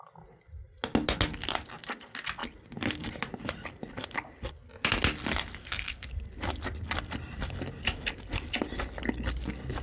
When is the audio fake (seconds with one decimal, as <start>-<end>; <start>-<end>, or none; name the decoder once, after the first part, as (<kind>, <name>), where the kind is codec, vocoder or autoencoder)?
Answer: 5.6-6.1 (codec, SNAC)